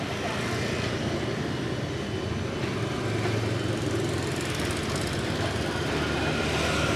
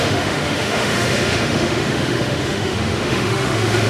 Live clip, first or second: first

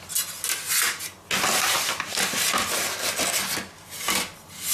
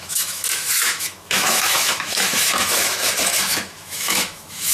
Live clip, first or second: first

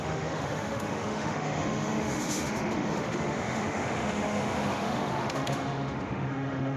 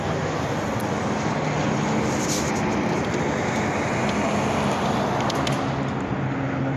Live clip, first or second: second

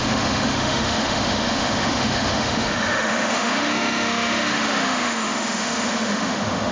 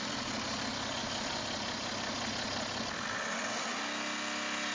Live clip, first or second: second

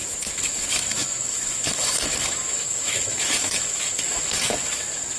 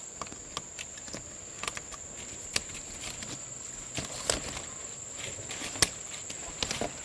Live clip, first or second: second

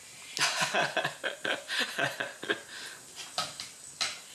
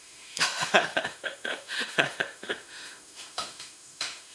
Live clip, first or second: first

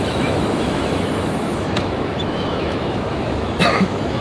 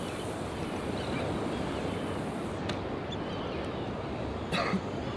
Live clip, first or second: second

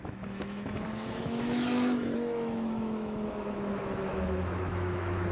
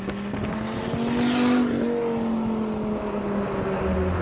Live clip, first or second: second